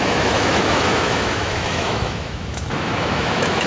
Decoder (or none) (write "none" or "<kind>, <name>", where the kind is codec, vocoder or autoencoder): autoencoder, DAC-VAE